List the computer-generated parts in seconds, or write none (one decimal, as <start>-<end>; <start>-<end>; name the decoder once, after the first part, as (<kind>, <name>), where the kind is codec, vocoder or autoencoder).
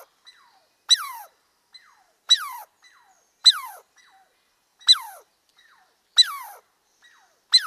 1.2-2.8 (vocoder, BigVGAN v2); 3.4-4.0; 4.7-6.0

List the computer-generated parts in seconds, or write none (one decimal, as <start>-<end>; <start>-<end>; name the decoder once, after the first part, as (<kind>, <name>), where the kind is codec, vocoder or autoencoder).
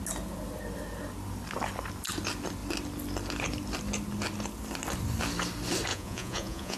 5.9-6.8 (vocoder, Vocos)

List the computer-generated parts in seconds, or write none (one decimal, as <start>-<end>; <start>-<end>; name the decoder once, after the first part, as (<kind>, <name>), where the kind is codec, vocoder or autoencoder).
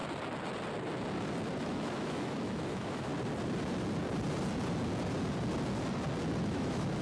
1.6-3.1 (autoencoder, DAC-VAE); 6.4-7.0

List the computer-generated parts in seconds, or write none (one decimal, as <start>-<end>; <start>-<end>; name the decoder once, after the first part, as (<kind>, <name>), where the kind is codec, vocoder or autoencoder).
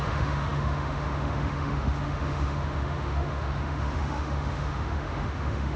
0.0-5.8 (autoencoder, DAC-VAE)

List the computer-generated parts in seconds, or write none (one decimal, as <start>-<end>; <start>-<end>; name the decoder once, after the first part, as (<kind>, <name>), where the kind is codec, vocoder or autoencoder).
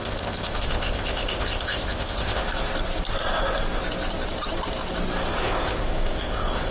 0.0-2.4 (codec, ZipCodec); 5.4-6.7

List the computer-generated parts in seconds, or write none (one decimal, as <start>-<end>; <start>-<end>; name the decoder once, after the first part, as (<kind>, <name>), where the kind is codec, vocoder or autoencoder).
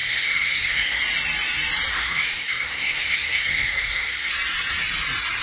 0.0-1.0 (codec, SNAC); 1.9-4.3